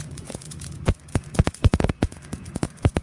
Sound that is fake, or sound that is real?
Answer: fake